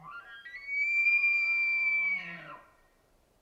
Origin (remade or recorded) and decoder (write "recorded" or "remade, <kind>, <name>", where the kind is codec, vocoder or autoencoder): remade, vocoder, BigVGAN v2